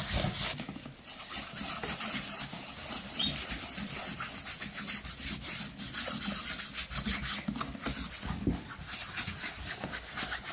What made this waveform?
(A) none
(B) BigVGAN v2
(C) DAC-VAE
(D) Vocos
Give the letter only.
A